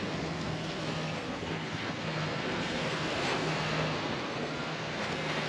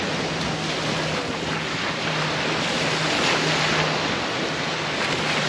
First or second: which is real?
second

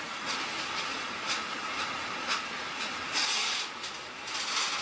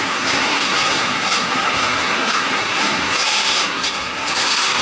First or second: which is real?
first